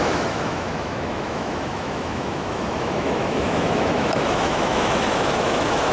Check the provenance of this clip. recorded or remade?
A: remade